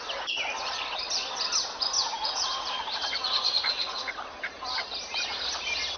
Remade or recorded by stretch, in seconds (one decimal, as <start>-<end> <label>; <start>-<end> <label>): 0.0-2.2 recorded; 2.2-4.1 remade; 4.1-6.0 recorded